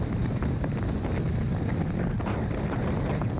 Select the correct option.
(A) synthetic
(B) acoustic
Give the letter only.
B